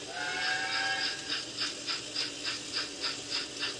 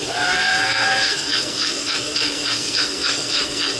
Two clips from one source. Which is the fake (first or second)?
second